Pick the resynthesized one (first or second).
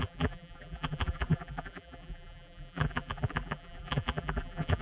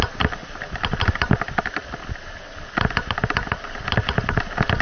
first